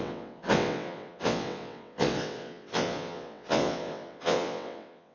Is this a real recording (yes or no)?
no